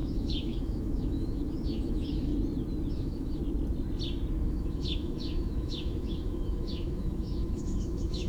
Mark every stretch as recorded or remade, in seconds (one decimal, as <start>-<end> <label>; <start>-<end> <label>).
0.0-2.3 remade; 2.3-2.9 recorded; 2.9-3.4 remade; 3.4-4.5 recorded; 4.5-8.3 remade